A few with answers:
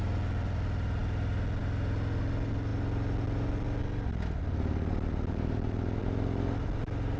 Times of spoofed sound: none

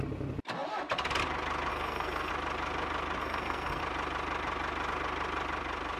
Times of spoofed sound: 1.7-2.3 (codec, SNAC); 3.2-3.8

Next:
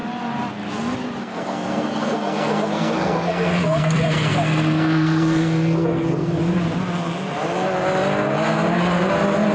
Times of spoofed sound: 1.2-6.4 (codec, SNAC)

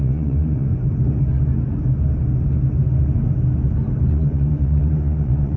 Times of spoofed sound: 0.0-0.7 (vocoder, Vocos); 4.1-5.6

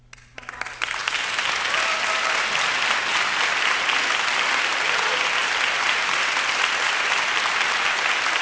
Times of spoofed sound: none